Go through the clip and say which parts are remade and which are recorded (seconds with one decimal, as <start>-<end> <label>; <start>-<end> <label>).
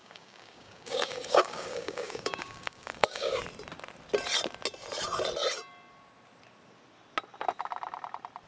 0.0-3.4 remade; 3.4-8.5 recorded